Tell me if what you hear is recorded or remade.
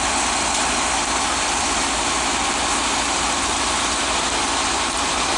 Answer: recorded